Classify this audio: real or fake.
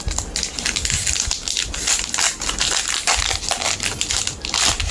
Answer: real